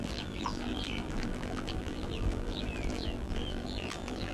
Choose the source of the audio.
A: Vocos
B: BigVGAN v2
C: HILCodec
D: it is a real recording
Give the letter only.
B